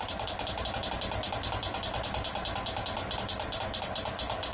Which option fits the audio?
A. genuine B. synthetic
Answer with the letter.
A